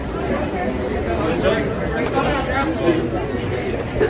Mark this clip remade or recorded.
recorded